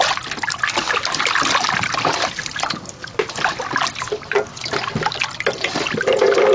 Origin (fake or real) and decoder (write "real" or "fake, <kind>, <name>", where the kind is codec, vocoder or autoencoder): real